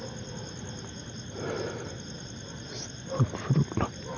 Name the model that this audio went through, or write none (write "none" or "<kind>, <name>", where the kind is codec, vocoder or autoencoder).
none